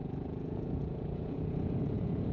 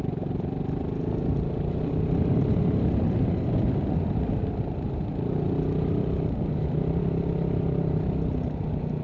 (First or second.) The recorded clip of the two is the second